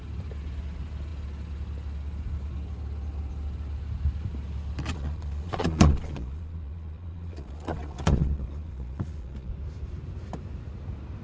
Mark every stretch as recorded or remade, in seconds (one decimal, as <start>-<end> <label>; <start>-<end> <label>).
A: 0.0-4.9 recorded; 4.9-9.5 remade; 9.5-11.2 recorded